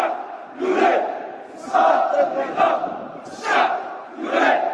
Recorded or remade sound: recorded